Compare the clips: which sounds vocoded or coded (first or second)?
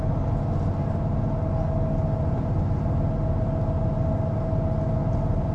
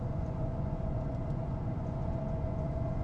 second